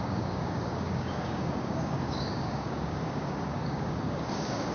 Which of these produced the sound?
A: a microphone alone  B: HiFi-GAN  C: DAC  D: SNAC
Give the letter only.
C